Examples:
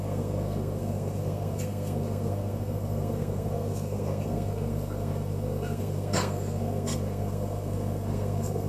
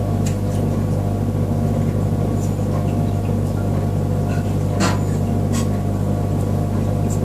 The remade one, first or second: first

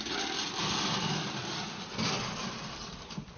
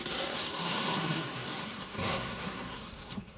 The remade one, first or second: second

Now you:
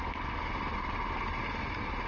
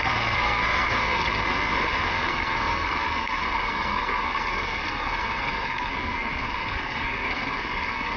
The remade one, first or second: second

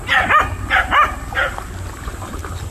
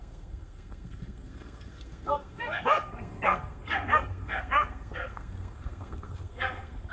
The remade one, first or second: second